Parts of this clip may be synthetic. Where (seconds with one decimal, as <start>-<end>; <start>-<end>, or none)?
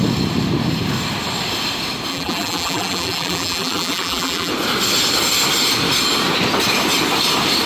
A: 2.1-4.5